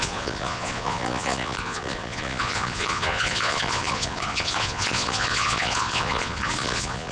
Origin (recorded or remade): remade